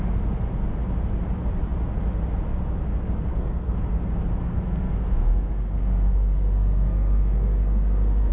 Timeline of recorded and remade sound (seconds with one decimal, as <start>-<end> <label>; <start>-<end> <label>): 0.0-3.3 recorded; 3.3-3.8 remade; 3.8-4.4 recorded; 4.4-8.3 remade